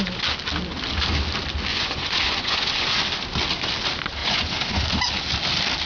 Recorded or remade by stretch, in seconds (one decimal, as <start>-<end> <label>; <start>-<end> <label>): 0.0-1.7 recorded; 1.7-3.0 remade; 3.0-4.2 recorded; 4.2-4.8 remade; 4.8-5.9 recorded